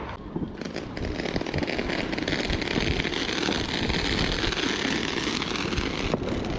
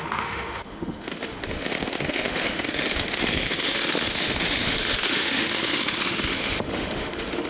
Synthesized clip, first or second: second